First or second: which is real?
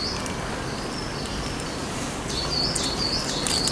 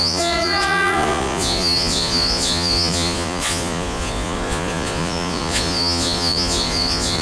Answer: first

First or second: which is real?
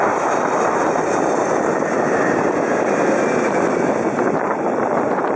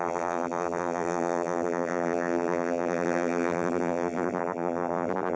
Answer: first